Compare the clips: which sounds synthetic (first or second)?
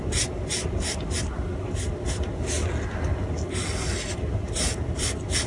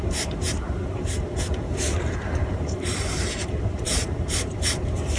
second